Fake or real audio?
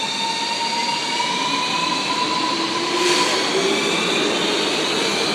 real